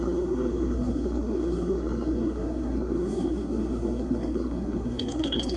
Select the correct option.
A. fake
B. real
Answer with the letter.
A